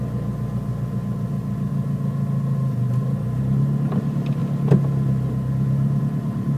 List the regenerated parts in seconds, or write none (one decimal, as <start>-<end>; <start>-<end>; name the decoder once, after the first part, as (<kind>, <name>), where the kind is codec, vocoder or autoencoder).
none